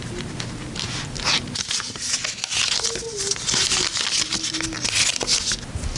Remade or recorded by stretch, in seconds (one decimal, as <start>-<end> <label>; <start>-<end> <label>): 0.0-6.0 recorded